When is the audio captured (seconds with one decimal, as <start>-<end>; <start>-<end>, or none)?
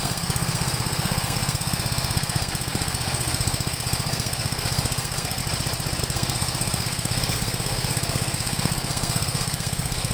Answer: 5.4-6.0